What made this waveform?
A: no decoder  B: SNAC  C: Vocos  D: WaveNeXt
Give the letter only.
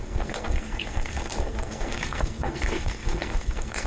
B